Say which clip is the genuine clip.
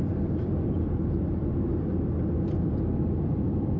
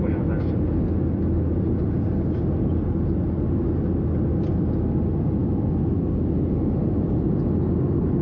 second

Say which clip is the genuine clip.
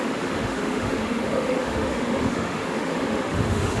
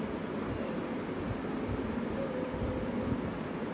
second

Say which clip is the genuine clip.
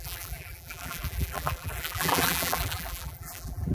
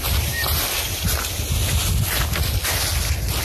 second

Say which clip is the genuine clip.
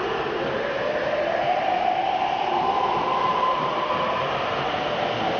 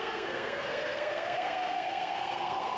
first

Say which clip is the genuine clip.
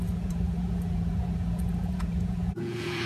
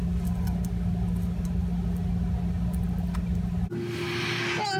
second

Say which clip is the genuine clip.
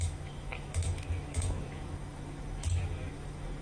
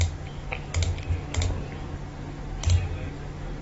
second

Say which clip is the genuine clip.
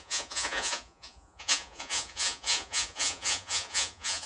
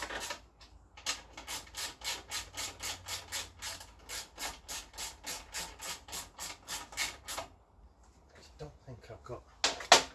second